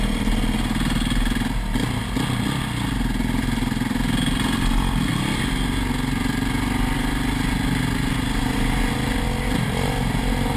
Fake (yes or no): no